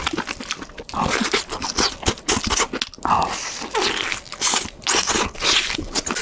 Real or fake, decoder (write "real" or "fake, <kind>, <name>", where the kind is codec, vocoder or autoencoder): real